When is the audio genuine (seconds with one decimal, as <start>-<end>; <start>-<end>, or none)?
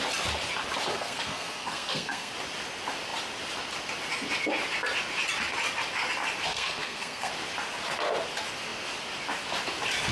0.0-0.9; 2.3-6.5; 7.3-10.1